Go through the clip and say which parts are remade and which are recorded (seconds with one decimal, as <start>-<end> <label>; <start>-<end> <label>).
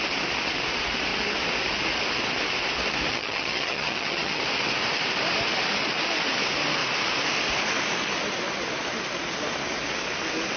0.0-3.1 recorded; 3.1-4.4 remade; 4.4-10.6 recorded